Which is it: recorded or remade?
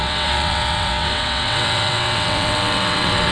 remade